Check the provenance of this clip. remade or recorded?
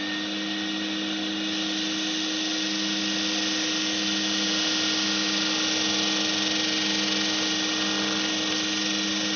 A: recorded